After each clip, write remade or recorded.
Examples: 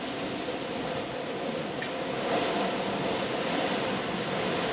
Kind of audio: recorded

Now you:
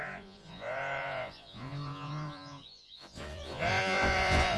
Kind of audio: remade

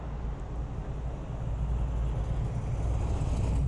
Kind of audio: recorded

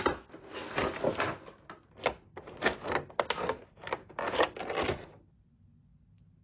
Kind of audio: recorded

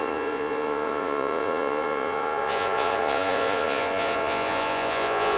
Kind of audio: remade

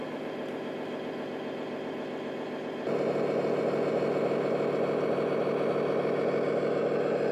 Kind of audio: recorded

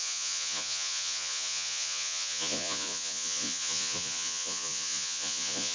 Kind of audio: remade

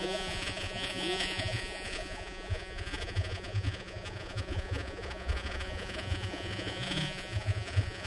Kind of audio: remade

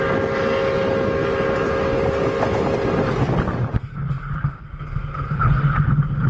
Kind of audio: recorded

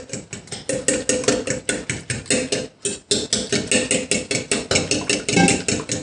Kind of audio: recorded